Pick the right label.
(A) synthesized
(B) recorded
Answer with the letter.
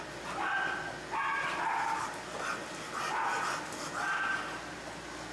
B